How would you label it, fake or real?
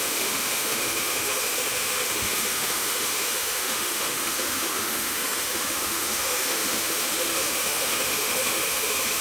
fake